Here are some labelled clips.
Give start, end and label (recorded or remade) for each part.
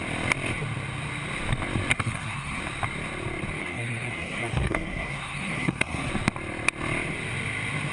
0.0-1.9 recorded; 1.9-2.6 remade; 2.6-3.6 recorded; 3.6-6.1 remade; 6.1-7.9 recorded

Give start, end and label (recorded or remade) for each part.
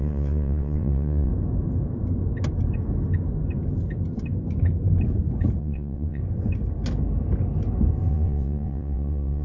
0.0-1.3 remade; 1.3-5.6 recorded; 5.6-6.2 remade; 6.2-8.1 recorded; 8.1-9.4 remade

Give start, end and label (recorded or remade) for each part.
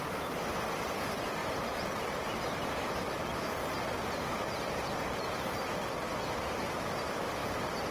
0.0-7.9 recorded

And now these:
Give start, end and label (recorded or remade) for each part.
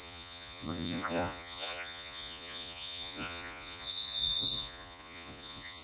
0.0-5.8 remade